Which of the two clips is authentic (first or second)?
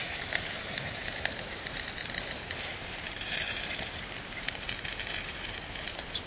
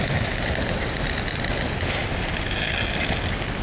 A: second